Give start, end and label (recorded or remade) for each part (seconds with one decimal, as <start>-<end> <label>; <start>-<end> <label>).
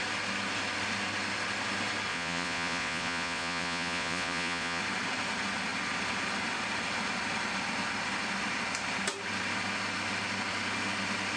0.0-2.1 recorded; 2.1-4.8 remade; 4.8-11.4 recorded